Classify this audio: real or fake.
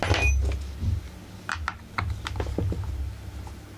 real